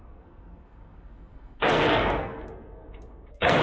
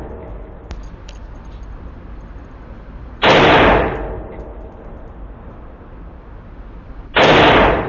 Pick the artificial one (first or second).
first